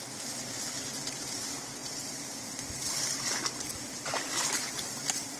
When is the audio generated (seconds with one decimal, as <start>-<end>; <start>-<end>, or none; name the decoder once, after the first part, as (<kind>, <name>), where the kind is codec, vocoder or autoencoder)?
none